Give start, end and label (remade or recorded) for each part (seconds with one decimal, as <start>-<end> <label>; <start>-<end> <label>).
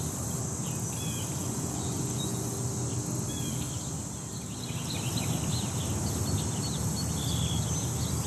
0.0-1.4 recorded; 1.4-2.5 remade; 2.5-8.3 recorded